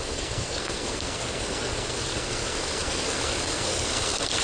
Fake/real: fake